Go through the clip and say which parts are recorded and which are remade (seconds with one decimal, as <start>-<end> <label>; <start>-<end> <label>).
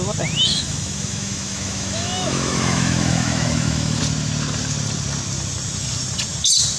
0.0-0.5 recorded; 0.5-4.0 remade; 4.0-6.8 recorded